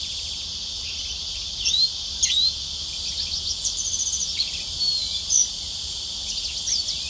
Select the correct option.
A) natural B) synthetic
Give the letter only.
A